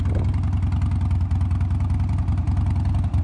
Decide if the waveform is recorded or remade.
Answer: recorded